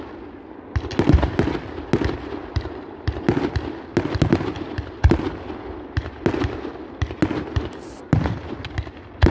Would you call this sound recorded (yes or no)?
yes